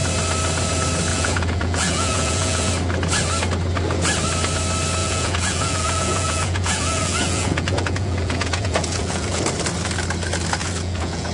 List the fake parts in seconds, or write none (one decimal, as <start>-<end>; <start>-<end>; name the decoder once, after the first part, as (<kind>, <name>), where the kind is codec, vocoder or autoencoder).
1.1-2.7 (vocoder, Vocos); 5.0-9.4; 10.6-11.3